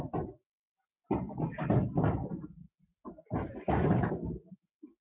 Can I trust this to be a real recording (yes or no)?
yes